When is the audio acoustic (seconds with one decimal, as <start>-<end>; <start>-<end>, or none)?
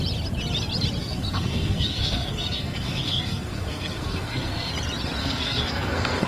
0.0-1.0; 4.7-5.2